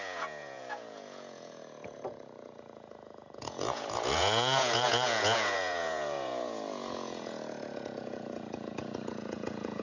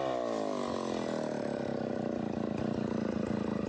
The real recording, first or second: second